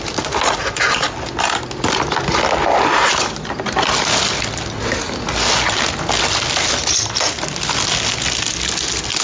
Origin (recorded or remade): recorded